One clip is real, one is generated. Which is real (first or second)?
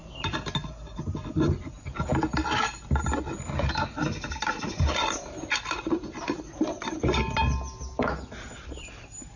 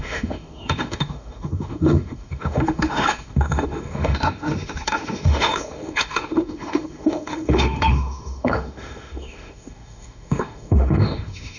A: first